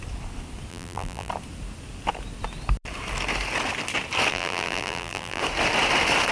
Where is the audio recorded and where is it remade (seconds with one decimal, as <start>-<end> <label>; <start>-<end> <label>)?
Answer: 0.0-0.7 recorded; 0.7-1.3 remade; 1.3-4.3 recorded; 4.3-5.4 remade; 5.4-6.3 recorded